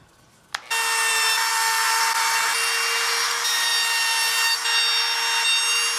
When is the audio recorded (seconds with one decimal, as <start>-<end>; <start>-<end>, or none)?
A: 0.0-1.5; 2.0-6.0